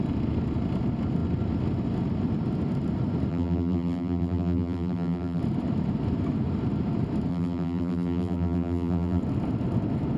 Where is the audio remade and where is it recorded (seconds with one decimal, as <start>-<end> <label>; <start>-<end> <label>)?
0.0-3.3 recorded; 3.3-5.4 remade; 5.4-7.3 recorded; 7.3-9.2 remade; 9.2-10.2 recorded